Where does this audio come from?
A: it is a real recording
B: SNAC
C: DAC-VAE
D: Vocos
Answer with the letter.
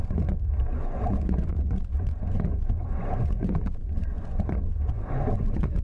D